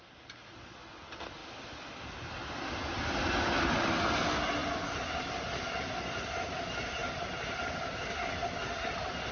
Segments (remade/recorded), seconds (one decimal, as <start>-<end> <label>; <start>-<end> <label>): 0.0-4.6 recorded; 4.6-5.3 remade; 5.3-7.0 recorded; 7.0-8.0 remade; 8.0-9.3 recorded